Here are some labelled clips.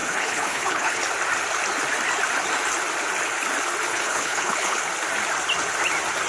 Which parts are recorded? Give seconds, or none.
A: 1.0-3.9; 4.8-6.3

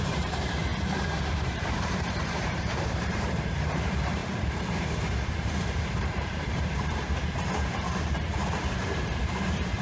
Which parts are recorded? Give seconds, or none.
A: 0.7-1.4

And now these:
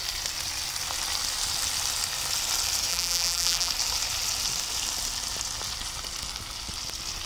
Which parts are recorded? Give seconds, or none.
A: 0.0-2.9; 3.7-7.3

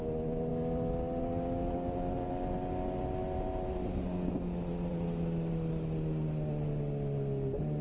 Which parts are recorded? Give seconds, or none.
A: 0.0-7.8

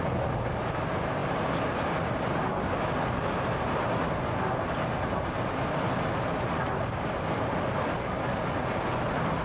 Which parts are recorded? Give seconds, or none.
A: 0.0-9.4

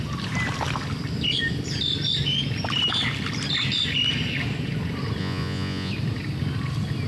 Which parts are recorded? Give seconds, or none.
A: 0.0-5.2; 5.9-7.1

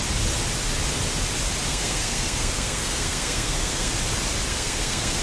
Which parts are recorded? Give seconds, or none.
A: 0.0-1.7; 3.9-4.5

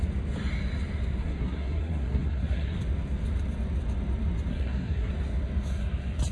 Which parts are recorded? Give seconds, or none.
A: 0.0-1.2; 2.8-4.5; 5.1-6.3